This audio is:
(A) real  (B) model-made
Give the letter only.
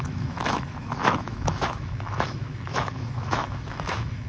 B